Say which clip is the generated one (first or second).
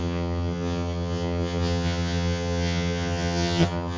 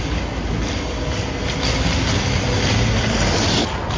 first